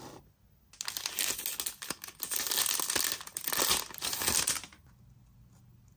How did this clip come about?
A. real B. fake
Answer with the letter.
A